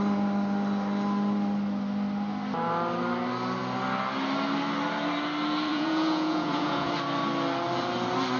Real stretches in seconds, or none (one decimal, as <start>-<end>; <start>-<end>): 0.0-5.7; 6.9-8.4